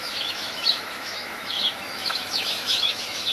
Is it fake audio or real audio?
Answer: fake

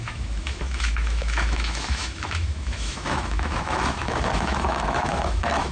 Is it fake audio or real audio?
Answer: fake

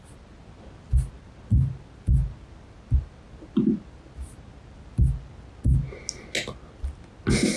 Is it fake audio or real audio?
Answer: real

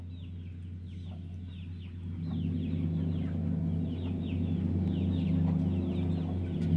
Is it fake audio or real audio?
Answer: real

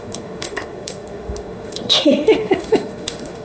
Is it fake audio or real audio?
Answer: fake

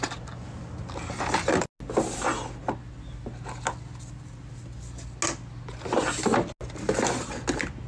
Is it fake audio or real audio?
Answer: real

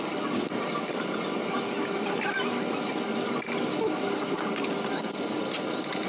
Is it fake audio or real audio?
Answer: real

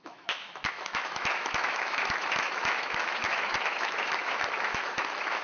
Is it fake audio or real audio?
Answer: fake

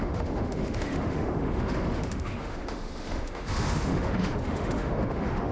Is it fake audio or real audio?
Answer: fake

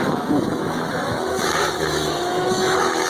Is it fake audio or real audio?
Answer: fake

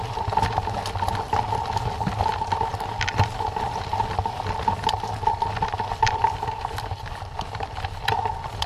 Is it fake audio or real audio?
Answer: real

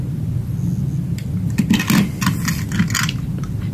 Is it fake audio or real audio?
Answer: real